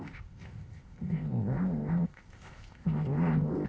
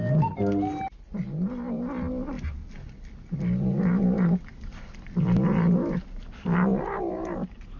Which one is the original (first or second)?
second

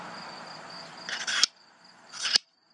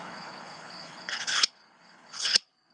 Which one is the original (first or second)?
first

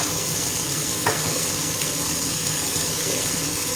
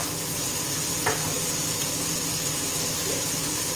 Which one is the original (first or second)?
second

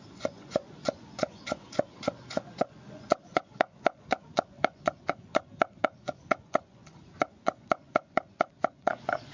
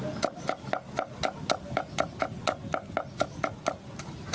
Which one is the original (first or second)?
second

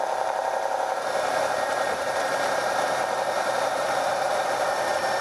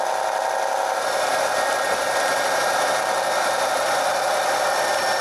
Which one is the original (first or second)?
second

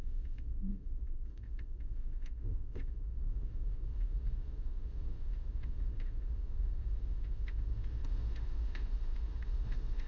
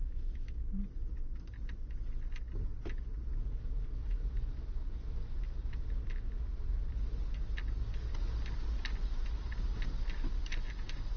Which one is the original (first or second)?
second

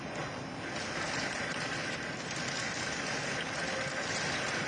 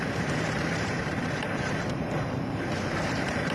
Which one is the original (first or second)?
first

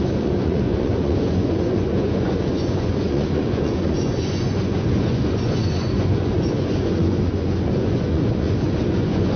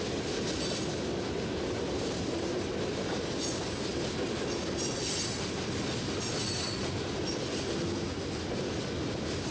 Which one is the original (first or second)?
second